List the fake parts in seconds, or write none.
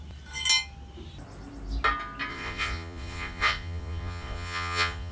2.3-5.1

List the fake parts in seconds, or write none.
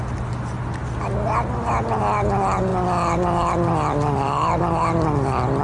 none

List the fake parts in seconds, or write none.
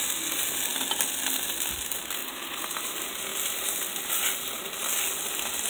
2.2-2.8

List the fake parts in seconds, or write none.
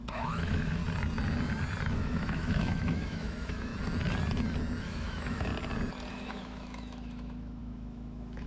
0.0-0.8; 1.9-3.7; 4.8-5.5; 6.1-8.5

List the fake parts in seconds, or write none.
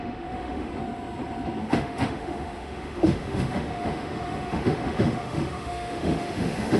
0.0-0.7; 1.6-6.8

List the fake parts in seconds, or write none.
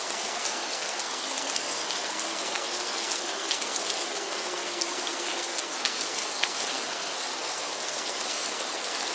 0.0-9.1